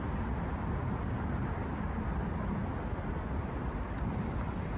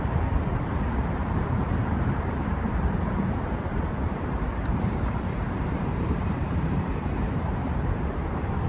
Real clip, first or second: first